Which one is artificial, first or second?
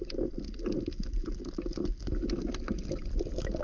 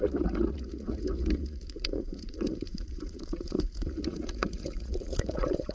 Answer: second